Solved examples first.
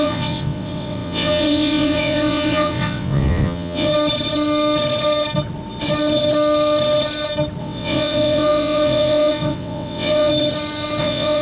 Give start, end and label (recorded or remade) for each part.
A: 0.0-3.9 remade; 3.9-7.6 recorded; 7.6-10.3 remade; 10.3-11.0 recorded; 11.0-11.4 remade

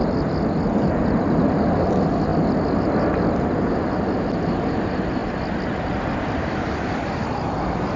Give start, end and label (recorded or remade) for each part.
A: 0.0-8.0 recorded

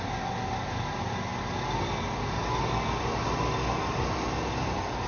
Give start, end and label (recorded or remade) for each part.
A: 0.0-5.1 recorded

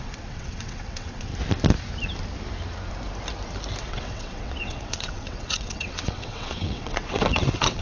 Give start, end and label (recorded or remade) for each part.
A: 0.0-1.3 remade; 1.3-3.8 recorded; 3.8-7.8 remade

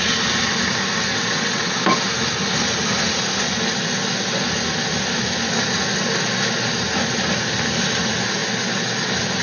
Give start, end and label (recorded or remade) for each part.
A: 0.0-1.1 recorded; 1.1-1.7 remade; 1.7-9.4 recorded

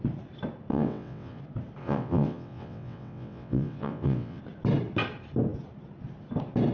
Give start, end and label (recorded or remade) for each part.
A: 0.0-0.7 recorded; 0.7-1.4 remade; 1.4-1.8 recorded; 1.8-4.4 remade; 4.4-6.7 recorded

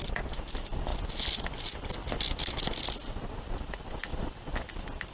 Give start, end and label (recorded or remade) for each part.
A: 0.0-5.1 recorded

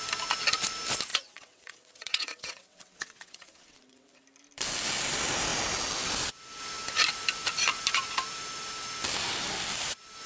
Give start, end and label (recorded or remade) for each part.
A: 0.0-1.1 recorded; 1.1-4.2 remade; 4.2-10.3 recorded